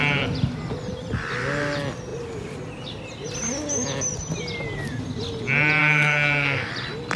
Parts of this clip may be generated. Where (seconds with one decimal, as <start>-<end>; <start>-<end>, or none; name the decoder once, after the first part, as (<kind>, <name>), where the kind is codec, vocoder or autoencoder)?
5.8-6.7 (codec, SNAC)